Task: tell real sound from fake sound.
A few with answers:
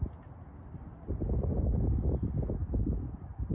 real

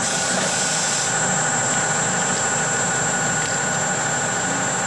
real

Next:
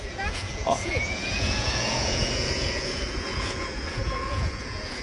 fake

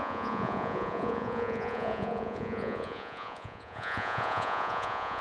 fake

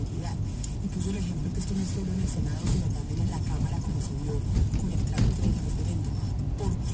real